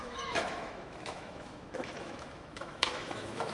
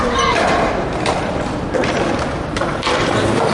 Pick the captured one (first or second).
second